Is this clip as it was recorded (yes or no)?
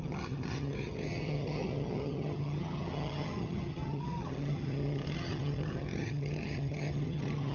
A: no